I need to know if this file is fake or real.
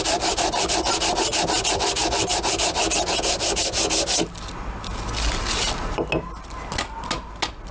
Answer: real